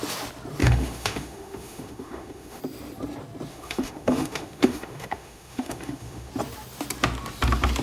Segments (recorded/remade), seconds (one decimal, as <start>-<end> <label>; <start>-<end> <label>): 0.0-0.6 recorded; 0.6-2.6 remade; 2.6-3.5 recorded; 3.5-6.3 remade; 6.3-7.8 recorded